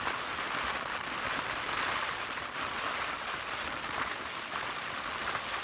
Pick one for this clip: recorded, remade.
recorded